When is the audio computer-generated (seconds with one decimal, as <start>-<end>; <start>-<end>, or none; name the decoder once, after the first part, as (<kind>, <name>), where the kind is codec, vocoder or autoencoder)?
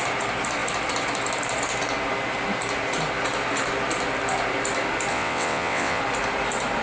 5.1-6.0 (vocoder, WaveNeXt)